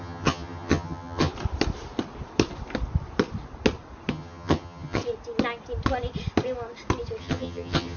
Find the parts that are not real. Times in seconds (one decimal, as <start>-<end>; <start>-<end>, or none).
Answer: 0.0-1.3; 4.1-5.0; 7.2-8.0